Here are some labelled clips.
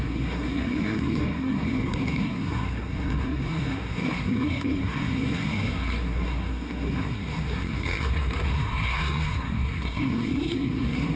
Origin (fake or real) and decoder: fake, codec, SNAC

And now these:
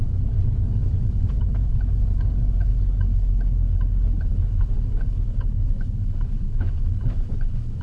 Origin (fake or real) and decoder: fake, codec, HILCodec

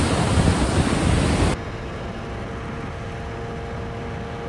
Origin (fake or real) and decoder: real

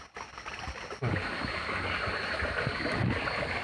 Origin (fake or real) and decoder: real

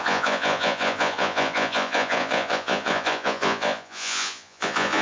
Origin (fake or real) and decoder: fake, vocoder, Vocos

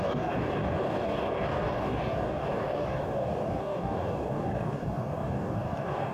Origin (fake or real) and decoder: fake, codec, DAC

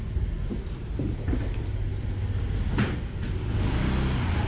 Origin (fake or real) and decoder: real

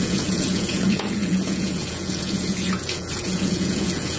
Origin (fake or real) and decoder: fake, vocoder, Vocos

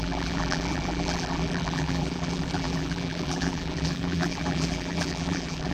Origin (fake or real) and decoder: fake, vocoder, BigVGAN v2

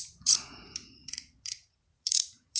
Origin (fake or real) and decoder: fake, vocoder, Vocos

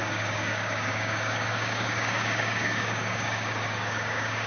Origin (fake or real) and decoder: fake, codec, DAC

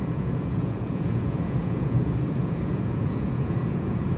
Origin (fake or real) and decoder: fake, vocoder, Vocos